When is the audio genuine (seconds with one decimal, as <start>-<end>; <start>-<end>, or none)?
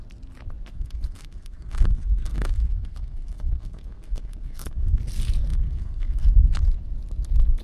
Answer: 0.0-0.7; 5.0-5.5; 6.5-7.6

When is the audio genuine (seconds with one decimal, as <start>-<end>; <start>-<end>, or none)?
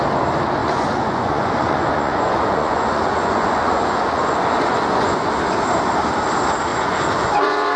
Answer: 0.0-0.6; 5.3-6.7